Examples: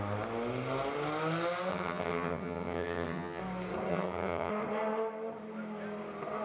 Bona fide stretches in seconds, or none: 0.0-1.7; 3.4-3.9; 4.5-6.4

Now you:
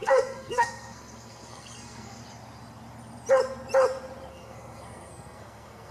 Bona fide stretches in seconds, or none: 2.2-4.3

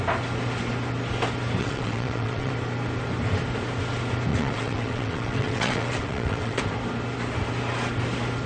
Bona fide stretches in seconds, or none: 0.0-1.6; 2.5-4.3; 6.6-8.5